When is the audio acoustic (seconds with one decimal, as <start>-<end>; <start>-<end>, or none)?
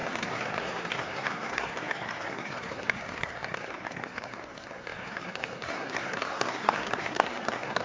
none